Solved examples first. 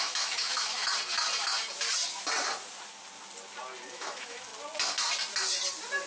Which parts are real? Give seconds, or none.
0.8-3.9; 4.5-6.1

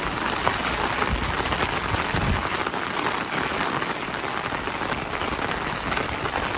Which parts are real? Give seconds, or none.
0.0-6.6

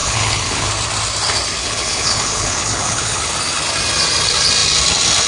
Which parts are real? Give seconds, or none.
0.7-1.6; 3.3-5.3